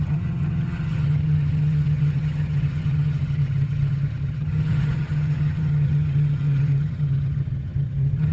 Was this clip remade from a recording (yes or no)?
yes